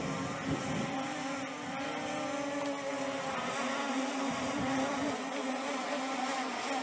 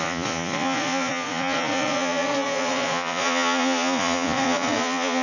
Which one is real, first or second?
first